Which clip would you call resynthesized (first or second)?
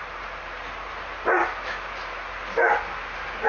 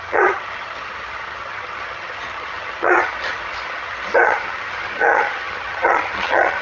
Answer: second